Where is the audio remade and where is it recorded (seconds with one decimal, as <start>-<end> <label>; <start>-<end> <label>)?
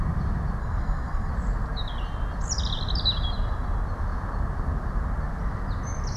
0.0-0.6 recorded; 0.6-1.3 remade; 1.3-6.2 recorded